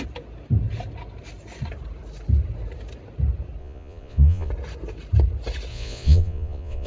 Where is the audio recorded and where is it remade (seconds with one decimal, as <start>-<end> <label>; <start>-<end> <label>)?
0.0-3.6 recorded; 3.6-4.5 remade; 4.5-5.7 recorded; 5.7-6.9 remade

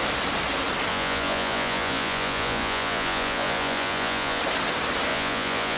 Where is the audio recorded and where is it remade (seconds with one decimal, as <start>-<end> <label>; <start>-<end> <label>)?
0.0-0.9 recorded; 0.9-4.4 remade; 4.4-5.1 recorded; 5.1-5.8 remade

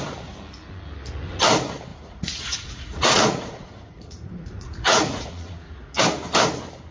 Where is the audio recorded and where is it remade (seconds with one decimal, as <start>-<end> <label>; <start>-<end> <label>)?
0.0-1.9 recorded; 1.9-6.0 remade; 6.0-6.9 recorded

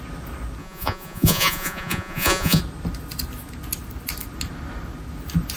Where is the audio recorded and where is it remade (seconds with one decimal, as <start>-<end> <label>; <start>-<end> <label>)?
0.0-0.6 recorded; 0.6-2.6 remade; 2.6-5.6 recorded

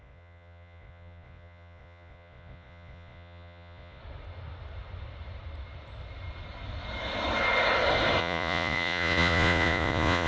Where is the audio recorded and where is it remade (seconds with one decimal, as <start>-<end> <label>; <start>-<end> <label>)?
0.0-4.0 remade; 4.0-8.2 recorded; 8.2-10.3 remade

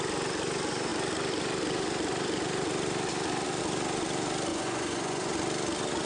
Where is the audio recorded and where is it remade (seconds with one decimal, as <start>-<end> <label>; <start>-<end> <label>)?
0.0-4.5 recorded; 4.5-5.3 remade; 5.3-6.1 recorded